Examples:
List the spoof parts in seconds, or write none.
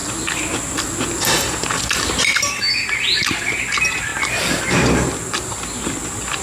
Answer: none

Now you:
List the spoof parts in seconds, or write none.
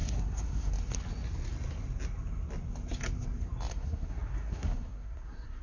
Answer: 0.0-0.7 (codec, SNAC); 3.7-5.6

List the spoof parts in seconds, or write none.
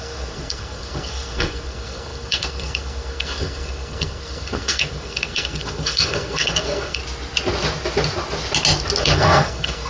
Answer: 0.0-7.0 (codec, SNAC); 9.0-9.9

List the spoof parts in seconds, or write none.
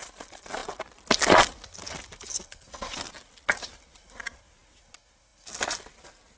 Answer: none